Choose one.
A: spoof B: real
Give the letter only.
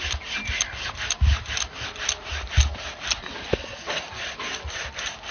B